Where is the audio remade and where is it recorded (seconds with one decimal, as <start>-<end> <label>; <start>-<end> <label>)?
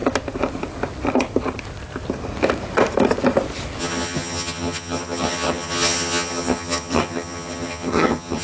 0.0-3.8 recorded; 3.8-8.4 remade